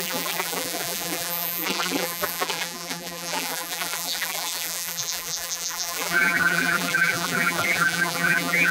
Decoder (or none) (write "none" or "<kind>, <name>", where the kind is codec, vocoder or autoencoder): vocoder, BigVGAN v2